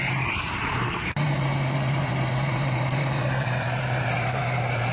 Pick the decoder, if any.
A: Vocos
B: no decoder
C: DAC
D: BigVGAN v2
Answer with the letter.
D